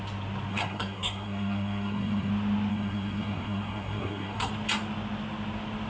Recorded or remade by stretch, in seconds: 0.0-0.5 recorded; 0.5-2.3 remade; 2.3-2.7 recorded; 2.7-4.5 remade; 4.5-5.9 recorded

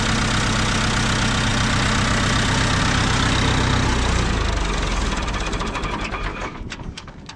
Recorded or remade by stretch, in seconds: 0.0-6.3 recorded; 6.3-7.4 remade

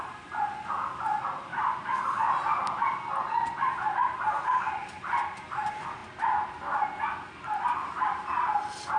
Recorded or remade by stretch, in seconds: 0.0-1.5 remade; 1.5-4.4 recorded; 4.4-6.0 remade; 6.0-7.3 recorded; 7.3-9.0 remade

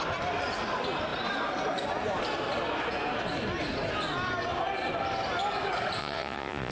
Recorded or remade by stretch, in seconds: 0.0-6.0 recorded; 6.0-6.7 remade

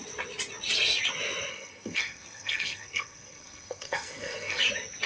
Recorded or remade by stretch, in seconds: 0.0-1.5 recorded; 1.5-4.6 remade; 4.6-5.1 recorded

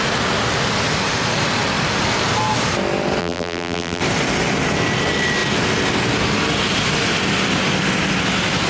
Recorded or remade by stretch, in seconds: 0.0-3.2 recorded; 3.2-4.0 remade; 4.0-8.7 recorded

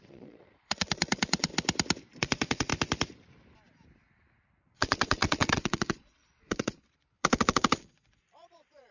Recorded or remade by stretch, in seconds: 0.0-1.5 remade; 1.5-2.2 recorded; 2.2-2.7 remade; 2.7-4.6 recorded; 4.6-8.9 remade